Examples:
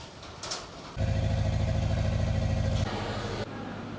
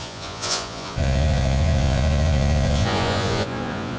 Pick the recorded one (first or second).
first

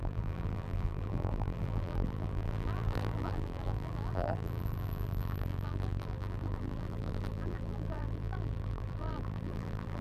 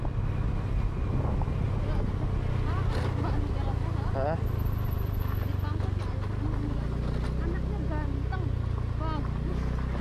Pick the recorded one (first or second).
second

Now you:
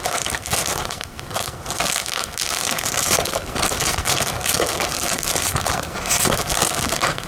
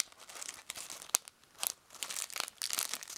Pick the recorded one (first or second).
second